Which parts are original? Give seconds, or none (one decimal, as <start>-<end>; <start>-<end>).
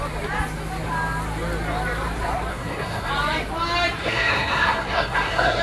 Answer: 0.0-2.5; 3.1-4.0